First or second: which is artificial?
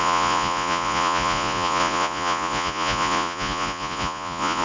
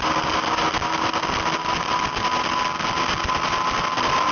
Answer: first